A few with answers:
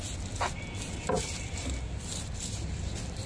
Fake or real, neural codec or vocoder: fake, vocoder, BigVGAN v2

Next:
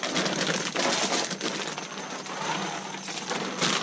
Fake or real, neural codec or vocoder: real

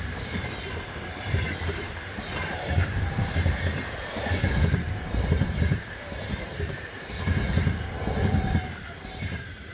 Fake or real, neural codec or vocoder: fake, vocoder, BigVGAN v2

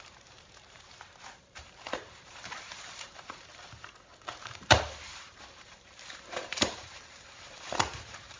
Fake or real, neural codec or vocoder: fake, vocoder, BigVGAN v2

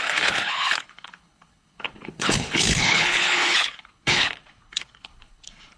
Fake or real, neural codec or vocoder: fake, codec, HILCodec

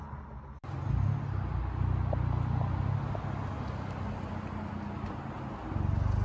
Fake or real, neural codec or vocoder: real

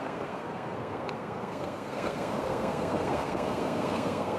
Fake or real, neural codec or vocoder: fake, codec, SNAC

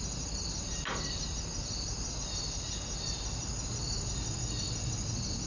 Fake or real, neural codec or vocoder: real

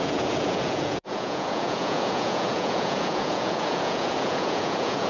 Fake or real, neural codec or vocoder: fake, vocoder, Vocos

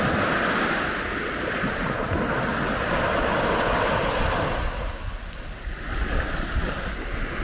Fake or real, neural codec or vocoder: real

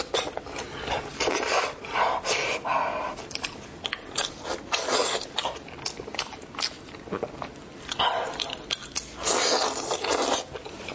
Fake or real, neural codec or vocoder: real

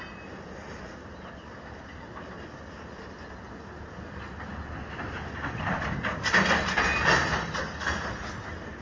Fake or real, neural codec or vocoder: real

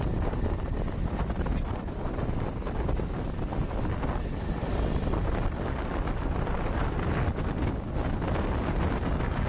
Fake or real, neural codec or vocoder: real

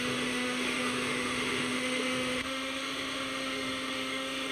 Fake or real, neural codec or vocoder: fake, autoencoder, DAC-VAE